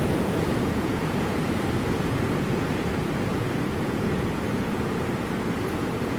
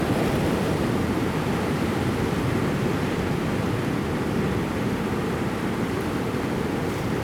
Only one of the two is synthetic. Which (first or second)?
first